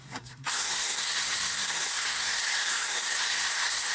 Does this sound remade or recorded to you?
remade